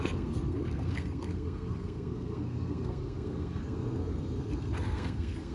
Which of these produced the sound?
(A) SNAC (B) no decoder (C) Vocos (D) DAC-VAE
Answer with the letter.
A